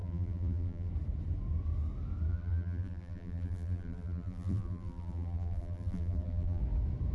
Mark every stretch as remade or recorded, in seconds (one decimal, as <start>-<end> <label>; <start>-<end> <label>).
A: 0.0-0.9 remade; 0.9-2.3 recorded; 2.3-6.6 remade; 6.6-7.1 recorded